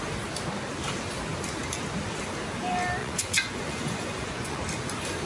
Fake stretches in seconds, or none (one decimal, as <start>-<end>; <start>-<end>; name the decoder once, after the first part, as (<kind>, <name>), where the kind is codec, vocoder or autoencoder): 3.0-4.6 (vocoder, Vocos)